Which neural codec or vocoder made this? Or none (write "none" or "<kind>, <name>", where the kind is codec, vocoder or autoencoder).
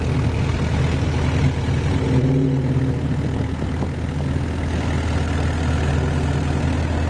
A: none